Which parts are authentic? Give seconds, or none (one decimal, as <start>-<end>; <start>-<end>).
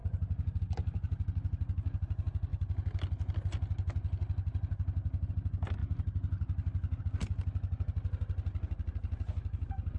0.0-10.0